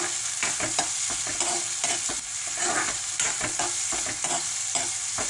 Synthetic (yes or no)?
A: no